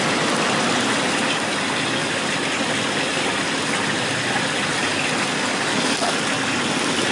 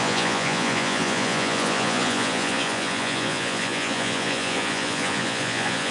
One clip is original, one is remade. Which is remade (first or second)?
second